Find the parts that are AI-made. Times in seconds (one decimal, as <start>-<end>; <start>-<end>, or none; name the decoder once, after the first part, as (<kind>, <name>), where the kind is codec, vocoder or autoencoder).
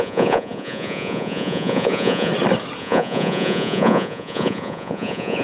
0.0-2.3 (vocoder, Vocos); 2.8-5.4